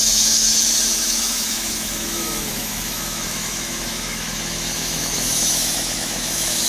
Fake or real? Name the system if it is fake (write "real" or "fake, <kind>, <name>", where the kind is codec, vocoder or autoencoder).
fake, autoencoder, DAC-VAE